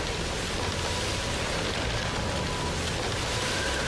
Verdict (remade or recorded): recorded